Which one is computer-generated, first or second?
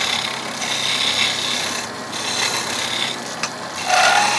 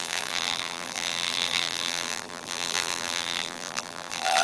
second